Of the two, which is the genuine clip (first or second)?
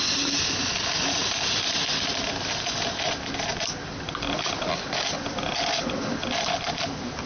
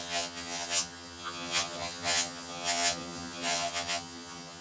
first